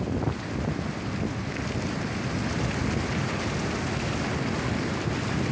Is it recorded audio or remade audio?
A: recorded